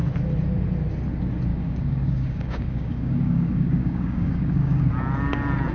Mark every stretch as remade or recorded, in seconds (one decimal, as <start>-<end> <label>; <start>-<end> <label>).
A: 0.0-1.5 recorded; 1.5-4.9 remade; 4.9-5.7 recorded